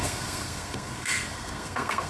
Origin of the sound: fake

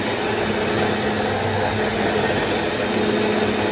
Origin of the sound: real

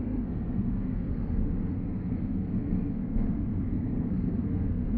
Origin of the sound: fake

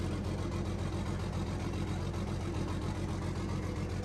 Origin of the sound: real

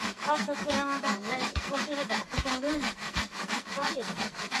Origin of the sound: fake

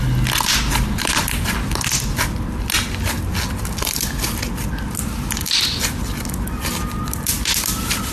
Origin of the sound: real